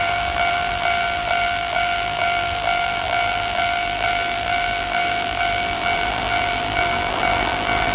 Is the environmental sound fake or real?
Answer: fake